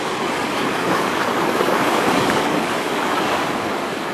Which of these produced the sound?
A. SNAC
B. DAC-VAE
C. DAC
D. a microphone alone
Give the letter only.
C